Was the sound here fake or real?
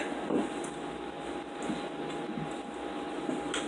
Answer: real